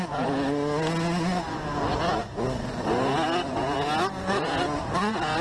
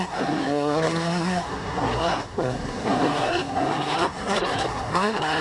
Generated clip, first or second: second